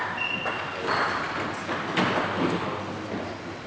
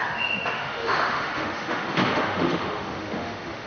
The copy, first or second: second